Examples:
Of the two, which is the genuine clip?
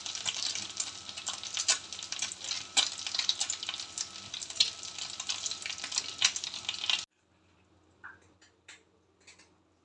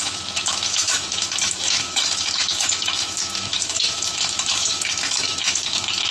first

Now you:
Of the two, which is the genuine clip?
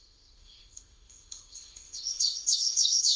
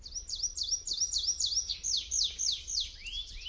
second